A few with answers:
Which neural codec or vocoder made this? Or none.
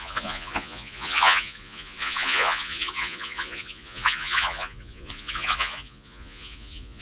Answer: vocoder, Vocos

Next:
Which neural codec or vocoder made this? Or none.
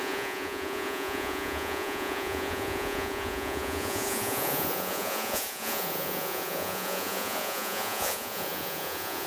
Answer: vocoder, Vocos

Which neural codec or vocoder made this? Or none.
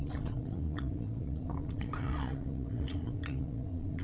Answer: vocoder, Vocos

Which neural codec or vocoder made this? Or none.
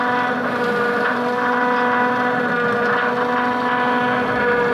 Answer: none